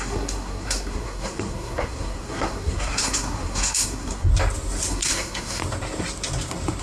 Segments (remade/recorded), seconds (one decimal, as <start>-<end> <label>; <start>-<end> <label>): 0.0-4.3 remade; 4.3-4.9 recorded; 4.9-5.6 remade; 5.6-6.8 recorded